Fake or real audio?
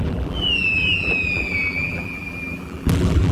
fake